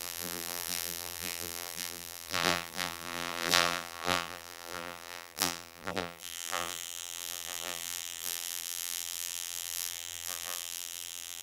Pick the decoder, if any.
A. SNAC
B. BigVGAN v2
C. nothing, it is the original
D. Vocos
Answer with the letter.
B